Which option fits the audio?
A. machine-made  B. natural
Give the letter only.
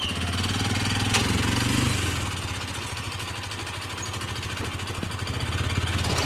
B